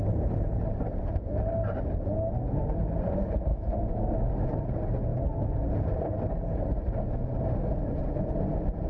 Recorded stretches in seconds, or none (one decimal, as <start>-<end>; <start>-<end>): 0.0-3.5; 4.3-8.9